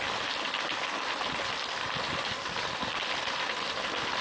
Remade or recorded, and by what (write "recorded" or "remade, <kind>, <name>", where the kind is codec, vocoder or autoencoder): remade, vocoder, BigVGAN v2